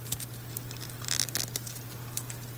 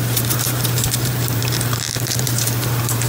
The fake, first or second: second